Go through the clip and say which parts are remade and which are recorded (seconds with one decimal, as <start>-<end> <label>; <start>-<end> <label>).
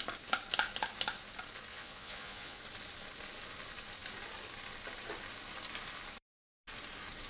0.0-1.7 recorded; 1.7-2.6 remade; 2.6-7.3 recorded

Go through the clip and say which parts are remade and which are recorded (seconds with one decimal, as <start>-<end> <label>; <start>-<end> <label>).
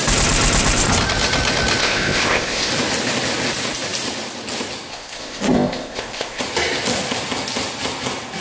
0.0-1.8 recorded; 1.8-2.7 remade; 2.7-4.9 recorded; 4.9-6.4 remade; 6.4-8.4 recorded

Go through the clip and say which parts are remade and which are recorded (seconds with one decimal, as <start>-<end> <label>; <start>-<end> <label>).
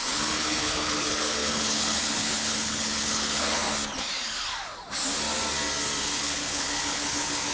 0.0-3.6 remade; 3.6-6.0 recorded; 6.0-7.5 remade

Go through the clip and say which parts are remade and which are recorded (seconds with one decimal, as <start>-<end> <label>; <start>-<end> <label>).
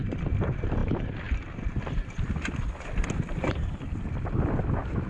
0.0-5.1 recorded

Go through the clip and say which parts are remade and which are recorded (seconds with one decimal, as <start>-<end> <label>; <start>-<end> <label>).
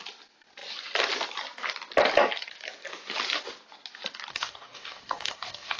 0.0-4.3 recorded; 4.3-5.8 remade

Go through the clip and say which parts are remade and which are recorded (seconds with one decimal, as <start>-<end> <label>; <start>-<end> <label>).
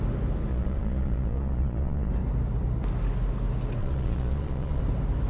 0.0-0.5 recorded; 0.5-2.1 remade; 2.1-3.8 recorded; 3.8-4.8 remade; 4.8-5.3 recorded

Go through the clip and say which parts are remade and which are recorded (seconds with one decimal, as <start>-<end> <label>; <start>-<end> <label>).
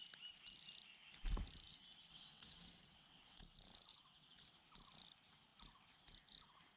0.0-2.1 recorded; 2.1-3.4 remade; 3.4-3.9 recorded; 3.9-4.5 remade; 4.5-6.8 recorded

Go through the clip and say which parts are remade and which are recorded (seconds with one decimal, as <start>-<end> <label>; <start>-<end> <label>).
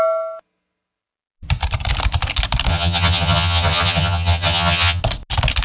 0.0-2.7 recorded; 2.7-5.0 remade; 5.0-5.6 recorded